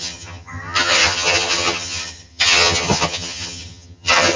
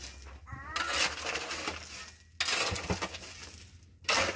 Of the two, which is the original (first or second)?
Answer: second